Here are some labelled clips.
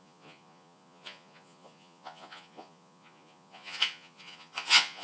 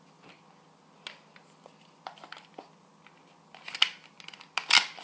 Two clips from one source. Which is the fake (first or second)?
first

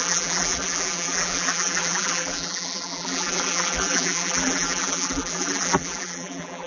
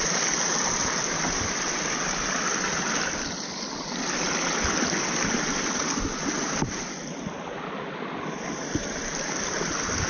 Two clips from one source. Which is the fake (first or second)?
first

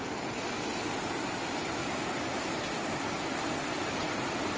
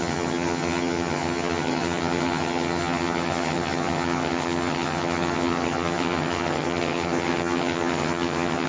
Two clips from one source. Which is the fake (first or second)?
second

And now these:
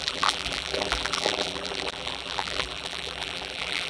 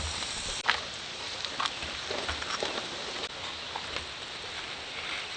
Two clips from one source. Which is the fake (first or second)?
first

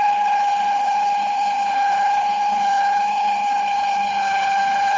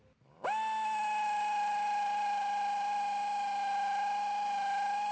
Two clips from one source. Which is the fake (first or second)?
first